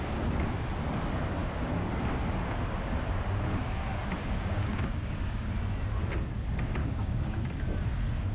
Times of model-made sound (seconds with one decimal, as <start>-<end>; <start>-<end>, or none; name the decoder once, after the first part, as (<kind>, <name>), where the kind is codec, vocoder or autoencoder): 1.4-1.9 (codec, DAC); 4.2-5.5; 6.8-7.6